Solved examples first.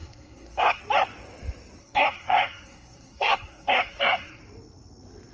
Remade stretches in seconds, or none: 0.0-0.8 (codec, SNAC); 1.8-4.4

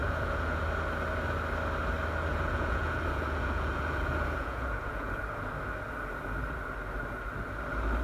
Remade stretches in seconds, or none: 0.0-0.6 (vocoder, Vocos); 2.3-5.2

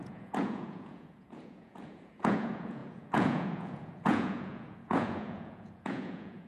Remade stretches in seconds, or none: 0.0-6.5 (vocoder, Vocos)

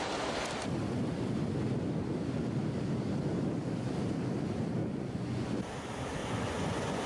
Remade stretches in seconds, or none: 4.8-5.6 (vocoder, Vocos); 6.2-7.1

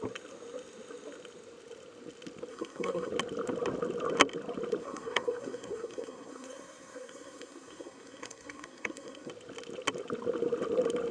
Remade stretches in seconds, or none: 2.5-3.1 (codec, SNAC); 4.8-9.3

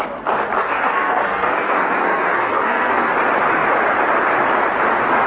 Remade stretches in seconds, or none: 0.6-3.1 (codec, SNAC)